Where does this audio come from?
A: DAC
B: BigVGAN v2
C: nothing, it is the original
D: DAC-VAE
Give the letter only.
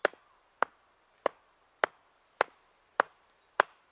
C